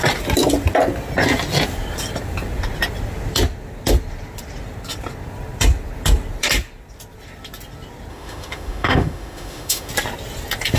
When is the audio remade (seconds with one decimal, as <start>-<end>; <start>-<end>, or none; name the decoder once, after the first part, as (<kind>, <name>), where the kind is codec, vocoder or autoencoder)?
8.1-9.9 (autoencoder, DAC-VAE)